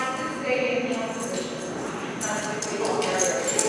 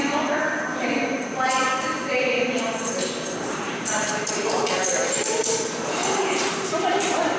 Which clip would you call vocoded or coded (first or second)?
second